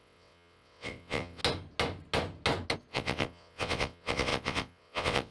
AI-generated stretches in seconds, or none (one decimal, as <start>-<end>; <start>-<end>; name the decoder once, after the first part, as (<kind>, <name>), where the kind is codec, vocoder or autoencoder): 0.0-1.4 (vocoder, WaveNeXt); 2.9-5.3